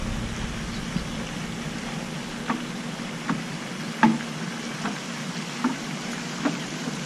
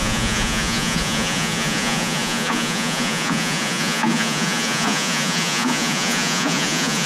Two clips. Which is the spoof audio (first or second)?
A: second